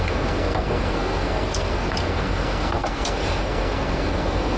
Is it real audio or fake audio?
fake